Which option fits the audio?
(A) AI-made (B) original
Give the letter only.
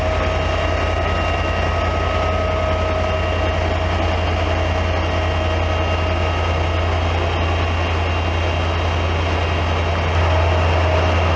B